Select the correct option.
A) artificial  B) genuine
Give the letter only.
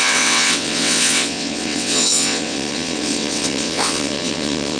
A